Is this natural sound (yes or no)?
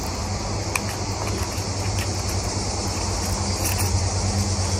yes